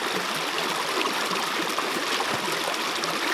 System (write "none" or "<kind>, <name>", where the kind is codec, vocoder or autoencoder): none